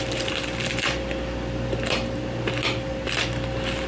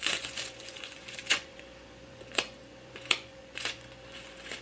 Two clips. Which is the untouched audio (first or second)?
first